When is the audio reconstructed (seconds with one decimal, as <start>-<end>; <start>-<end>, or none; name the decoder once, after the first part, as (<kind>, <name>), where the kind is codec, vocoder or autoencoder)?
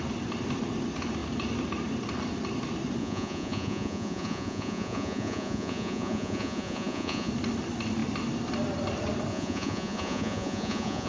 3.0-7.3 (vocoder, Vocos); 9.3-11.1